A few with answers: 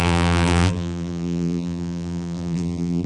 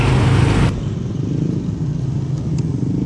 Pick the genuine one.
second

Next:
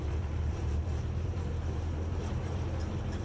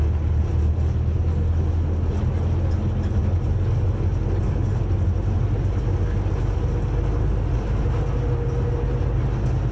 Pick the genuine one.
second